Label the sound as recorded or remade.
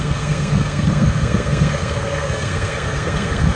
remade